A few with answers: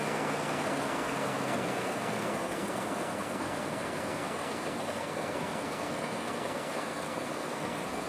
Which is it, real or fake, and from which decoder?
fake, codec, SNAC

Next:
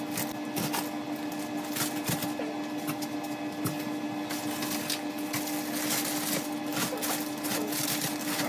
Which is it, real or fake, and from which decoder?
real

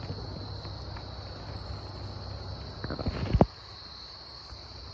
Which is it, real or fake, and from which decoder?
real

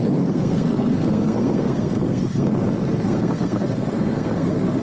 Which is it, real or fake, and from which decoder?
fake, codec, SNAC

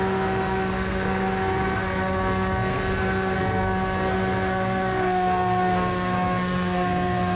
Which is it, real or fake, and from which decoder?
fake, codec, SNAC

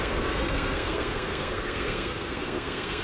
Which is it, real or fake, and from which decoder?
fake, codec, SNAC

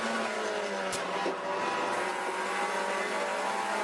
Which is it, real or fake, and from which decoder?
real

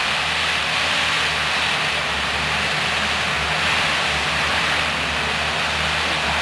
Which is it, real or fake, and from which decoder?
real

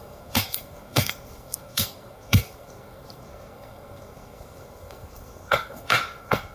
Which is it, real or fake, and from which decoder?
fake, codec, SNAC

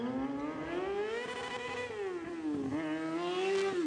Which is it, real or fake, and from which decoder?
real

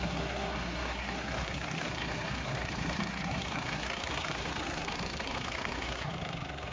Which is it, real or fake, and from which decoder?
fake, codec, SNAC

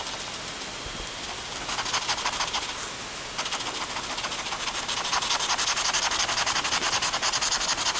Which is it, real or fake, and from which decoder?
real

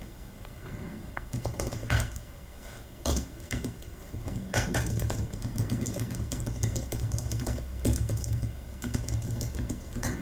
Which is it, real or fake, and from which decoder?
fake, codec, SNAC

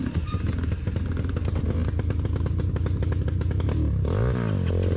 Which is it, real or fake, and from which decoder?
real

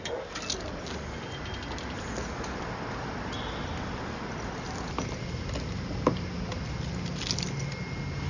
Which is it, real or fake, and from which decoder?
real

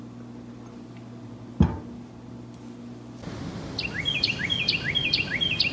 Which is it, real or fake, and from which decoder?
real